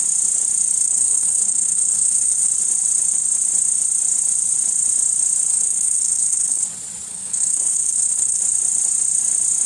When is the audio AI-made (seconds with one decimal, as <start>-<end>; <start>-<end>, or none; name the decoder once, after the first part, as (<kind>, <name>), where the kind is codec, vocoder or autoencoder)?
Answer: 0.8-2.5 (codec, SNAC); 5.5-6.6; 7.1-8.4